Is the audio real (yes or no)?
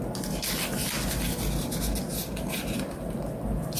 yes